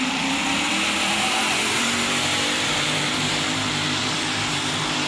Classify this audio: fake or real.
fake